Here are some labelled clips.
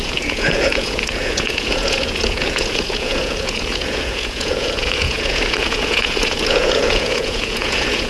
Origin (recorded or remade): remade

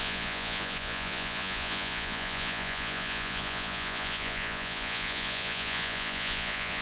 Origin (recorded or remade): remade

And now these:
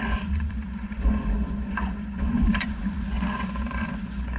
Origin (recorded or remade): remade